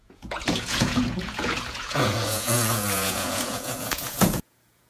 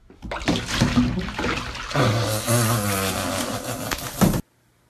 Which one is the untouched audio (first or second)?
second